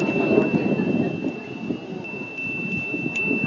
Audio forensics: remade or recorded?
recorded